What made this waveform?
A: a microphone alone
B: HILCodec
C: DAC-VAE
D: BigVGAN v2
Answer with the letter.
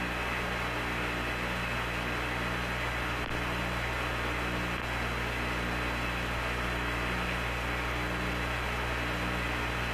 A